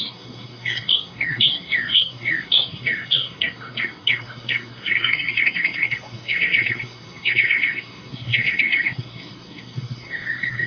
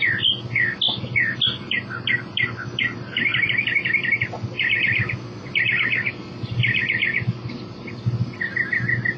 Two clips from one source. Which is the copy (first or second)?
first